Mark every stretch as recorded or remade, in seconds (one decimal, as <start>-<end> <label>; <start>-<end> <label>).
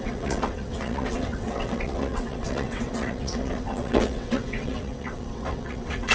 0.0-6.1 remade